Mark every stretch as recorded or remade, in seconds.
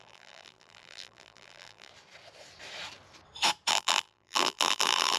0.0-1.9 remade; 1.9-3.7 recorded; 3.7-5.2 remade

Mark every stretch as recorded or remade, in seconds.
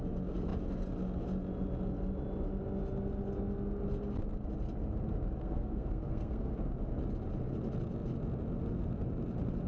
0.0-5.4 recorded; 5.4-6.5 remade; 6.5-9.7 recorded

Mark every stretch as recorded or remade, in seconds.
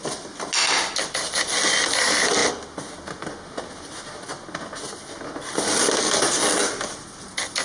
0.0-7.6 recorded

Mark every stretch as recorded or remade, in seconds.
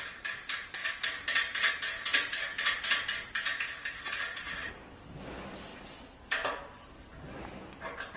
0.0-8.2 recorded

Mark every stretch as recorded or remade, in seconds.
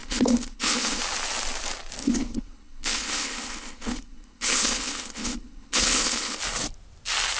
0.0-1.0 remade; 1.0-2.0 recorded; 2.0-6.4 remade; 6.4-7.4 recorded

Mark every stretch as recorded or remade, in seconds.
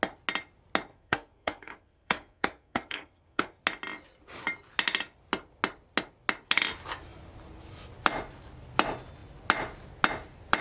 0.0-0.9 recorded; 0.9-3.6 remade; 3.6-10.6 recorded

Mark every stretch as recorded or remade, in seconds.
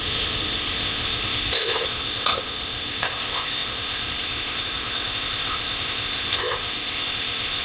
0.0-7.6 remade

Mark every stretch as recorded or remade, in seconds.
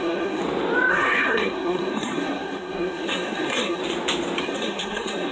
0.0-0.4 remade; 0.4-0.9 recorded; 0.9-3.8 remade; 3.8-4.4 recorded; 4.4-5.3 remade